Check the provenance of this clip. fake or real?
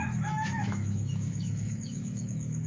fake